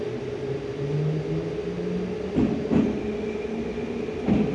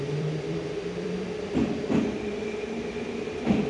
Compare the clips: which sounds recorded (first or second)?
first